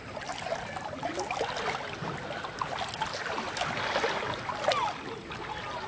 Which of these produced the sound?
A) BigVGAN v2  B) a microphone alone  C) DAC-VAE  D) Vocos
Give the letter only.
B